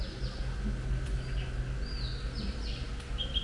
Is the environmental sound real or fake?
real